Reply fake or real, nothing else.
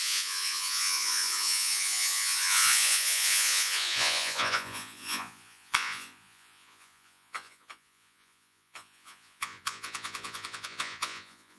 fake